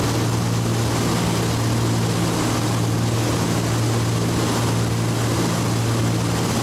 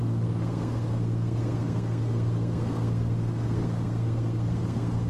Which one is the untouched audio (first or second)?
first